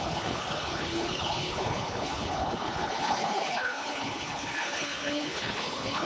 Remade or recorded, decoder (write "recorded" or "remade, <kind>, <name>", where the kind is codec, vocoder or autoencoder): remade, codec, HILCodec